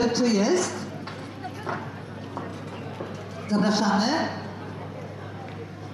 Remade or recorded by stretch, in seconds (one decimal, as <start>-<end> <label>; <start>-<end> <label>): 0.0-5.9 recorded